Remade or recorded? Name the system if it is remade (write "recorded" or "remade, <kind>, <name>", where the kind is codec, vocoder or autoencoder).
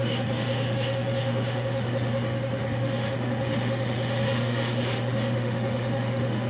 remade, autoencoder, DAC-VAE